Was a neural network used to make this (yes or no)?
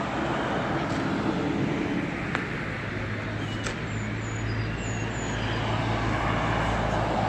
no